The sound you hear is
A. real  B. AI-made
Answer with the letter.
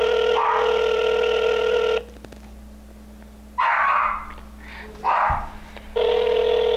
A